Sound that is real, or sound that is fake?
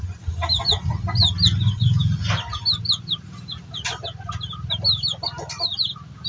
real